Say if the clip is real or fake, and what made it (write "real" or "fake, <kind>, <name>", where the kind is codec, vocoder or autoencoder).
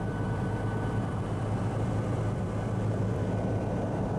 fake, vocoder, BigVGAN v2